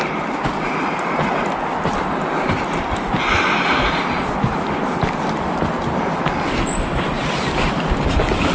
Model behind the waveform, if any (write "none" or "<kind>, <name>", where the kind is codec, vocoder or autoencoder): none